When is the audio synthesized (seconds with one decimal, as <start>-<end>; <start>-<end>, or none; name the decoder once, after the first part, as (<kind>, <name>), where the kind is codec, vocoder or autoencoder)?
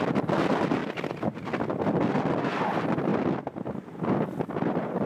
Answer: none